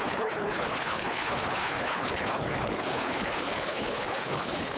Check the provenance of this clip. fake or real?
fake